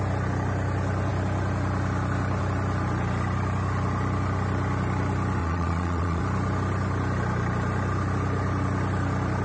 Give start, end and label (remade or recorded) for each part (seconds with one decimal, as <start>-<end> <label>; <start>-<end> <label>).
0.0-5.4 recorded; 5.4-6.2 remade; 6.2-9.4 recorded